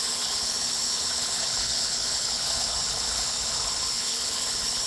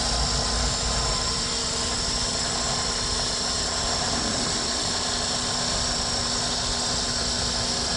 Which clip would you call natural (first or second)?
second